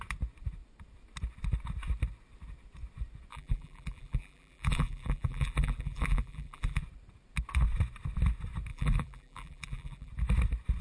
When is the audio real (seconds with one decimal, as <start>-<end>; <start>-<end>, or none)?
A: 0.0-3.3; 6.8-8.7; 10.1-10.8